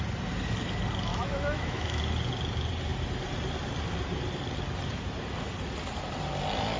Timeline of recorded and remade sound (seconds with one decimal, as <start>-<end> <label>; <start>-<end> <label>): 0.0-1.1 recorded; 1.1-2.0 remade; 2.0-6.8 recorded